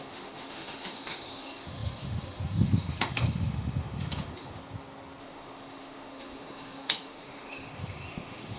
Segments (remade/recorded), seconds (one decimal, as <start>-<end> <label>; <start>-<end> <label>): 0.0-4.6 remade; 4.6-5.2 recorded; 5.2-8.6 remade